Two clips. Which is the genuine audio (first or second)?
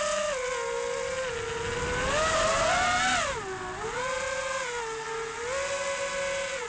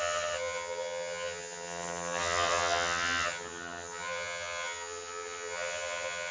first